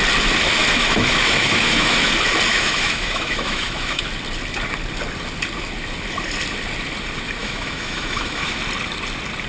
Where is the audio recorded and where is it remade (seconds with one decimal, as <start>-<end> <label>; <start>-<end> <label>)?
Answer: 0.0-0.6 recorded; 0.6-2.1 remade; 2.1-2.5 recorded; 2.5-4.0 remade; 4.0-7.4 recorded; 7.4-8.6 remade; 8.6-9.5 recorded